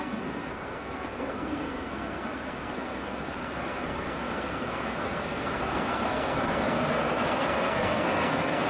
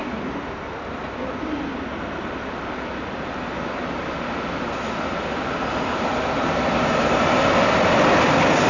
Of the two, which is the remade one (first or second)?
first